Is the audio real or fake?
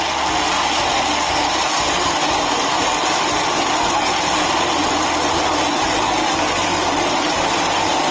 real